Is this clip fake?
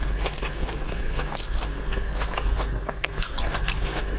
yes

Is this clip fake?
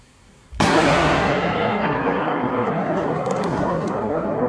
yes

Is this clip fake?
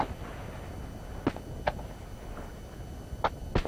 no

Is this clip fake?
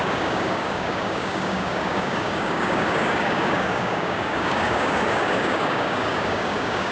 yes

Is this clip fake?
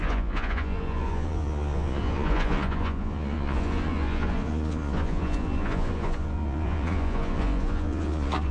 yes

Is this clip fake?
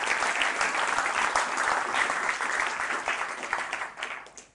no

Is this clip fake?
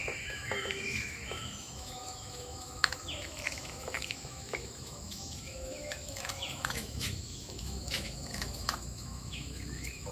yes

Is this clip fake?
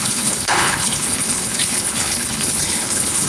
yes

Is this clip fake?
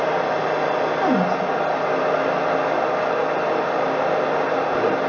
no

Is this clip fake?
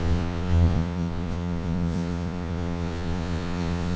yes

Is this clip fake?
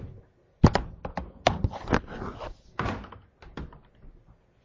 no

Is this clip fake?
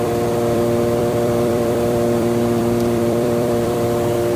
yes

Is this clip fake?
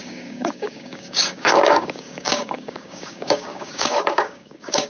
yes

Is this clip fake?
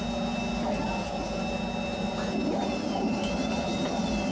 no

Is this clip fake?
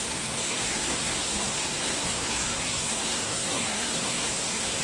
yes